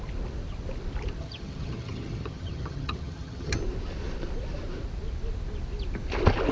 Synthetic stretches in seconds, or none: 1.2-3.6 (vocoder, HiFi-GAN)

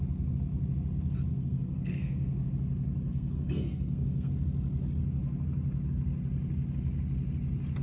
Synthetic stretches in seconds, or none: 1.3-2.5 (codec, SNAC); 3.1-4.3